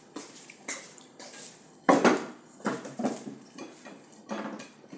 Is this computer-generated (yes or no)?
no